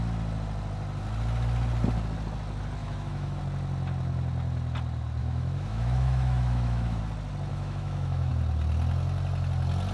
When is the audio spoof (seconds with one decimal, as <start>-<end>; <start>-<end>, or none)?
2.8-3.4; 5.2-7.0; 7.5-8.3